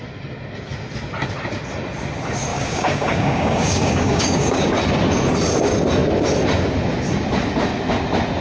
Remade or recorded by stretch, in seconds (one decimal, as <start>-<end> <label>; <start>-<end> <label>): 0.0-2.5 recorded; 2.5-4.7 remade; 4.7-8.4 recorded